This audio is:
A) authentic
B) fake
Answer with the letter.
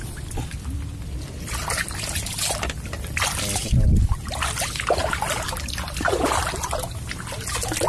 A